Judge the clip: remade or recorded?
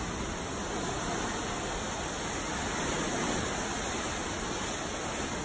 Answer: recorded